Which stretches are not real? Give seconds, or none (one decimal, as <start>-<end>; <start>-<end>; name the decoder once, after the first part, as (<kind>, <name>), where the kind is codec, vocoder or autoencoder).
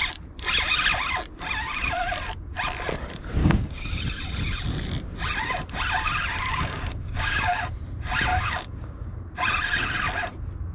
3.4-4.0 (codec, DAC); 6.5-7.6; 8.3-9.2